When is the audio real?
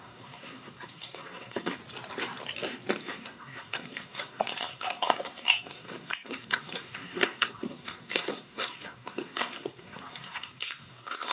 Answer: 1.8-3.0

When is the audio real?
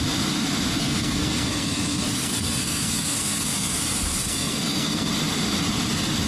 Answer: 0.0-0.8; 3.8-4.2; 5.1-6.3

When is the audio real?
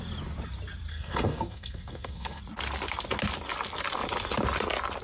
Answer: 0.0-0.9; 2.4-5.0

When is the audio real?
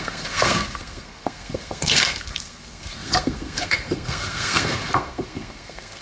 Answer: none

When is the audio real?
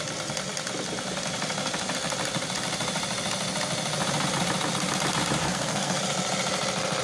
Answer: 0.0-5.4; 6.0-7.0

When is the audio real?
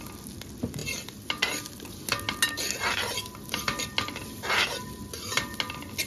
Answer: 0.0-6.1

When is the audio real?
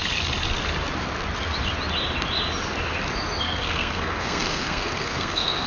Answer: 0.0-3.4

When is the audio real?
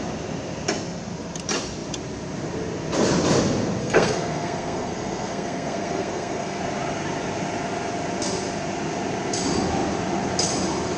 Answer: 0.0-3.8; 6.6-11.0